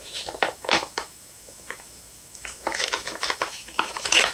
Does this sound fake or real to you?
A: fake